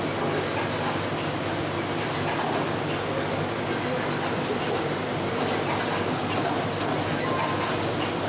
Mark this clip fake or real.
real